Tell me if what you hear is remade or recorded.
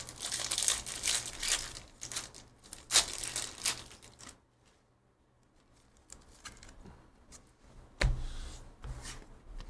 recorded